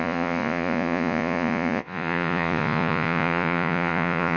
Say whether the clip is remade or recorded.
remade